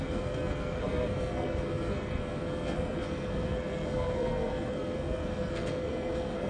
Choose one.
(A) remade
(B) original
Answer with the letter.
A